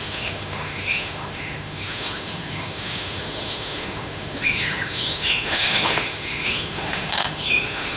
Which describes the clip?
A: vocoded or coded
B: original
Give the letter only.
A